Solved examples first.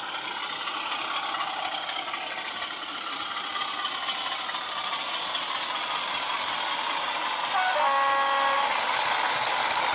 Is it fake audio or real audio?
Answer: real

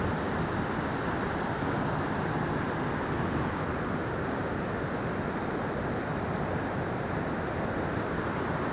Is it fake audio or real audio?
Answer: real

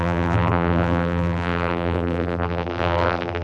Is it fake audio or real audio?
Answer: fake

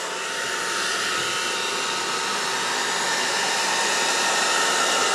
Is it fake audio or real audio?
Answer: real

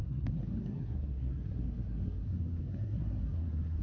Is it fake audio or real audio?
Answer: fake